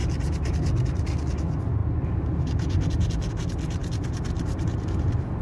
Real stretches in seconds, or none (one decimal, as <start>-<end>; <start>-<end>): 0.6-3.8